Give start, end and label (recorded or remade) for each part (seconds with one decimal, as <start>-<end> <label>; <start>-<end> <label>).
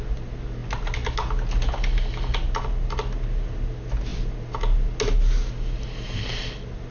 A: 0.0-6.9 recorded